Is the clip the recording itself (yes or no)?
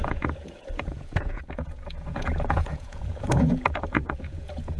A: no